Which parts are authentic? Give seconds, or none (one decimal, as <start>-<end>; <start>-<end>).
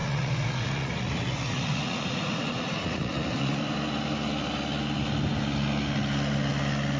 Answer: 3.6-7.0